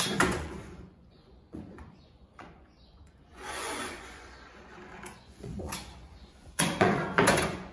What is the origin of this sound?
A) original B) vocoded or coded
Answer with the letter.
B